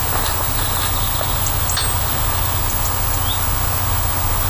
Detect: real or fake real